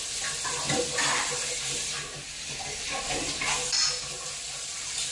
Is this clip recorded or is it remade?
recorded